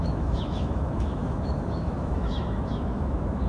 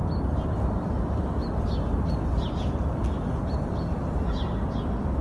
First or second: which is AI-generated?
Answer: first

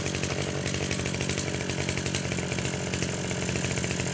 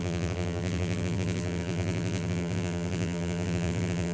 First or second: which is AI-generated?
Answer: second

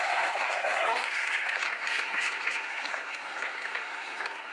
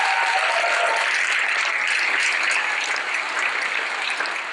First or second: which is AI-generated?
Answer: first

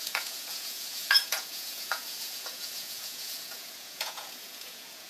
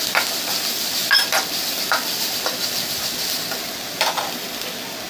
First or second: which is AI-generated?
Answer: first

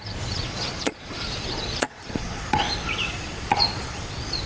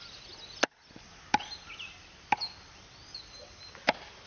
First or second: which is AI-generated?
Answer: first